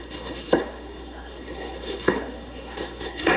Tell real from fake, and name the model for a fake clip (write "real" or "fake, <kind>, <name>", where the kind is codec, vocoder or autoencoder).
fake, codec, SNAC